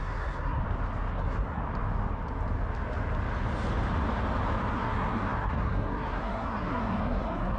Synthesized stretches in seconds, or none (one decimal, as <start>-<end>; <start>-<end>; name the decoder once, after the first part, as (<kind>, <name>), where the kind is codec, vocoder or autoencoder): 0.0-0.6 (codec, SNAC); 1.1-1.6; 4.7-7.6